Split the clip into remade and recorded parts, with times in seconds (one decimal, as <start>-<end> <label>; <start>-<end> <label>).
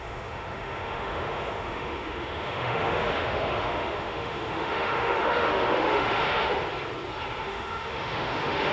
0.0-6.6 remade; 6.6-7.4 recorded; 7.4-8.7 remade